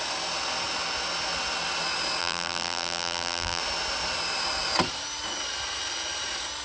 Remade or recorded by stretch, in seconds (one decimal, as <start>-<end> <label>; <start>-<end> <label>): 0.0-2.2 recorded; 2.2-3.6 remade; 3.6-6.6 recorded